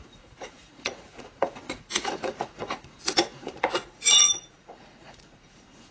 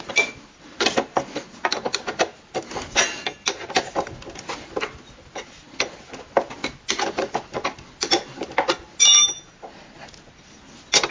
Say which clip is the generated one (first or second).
first